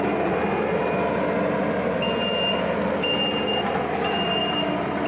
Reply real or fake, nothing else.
real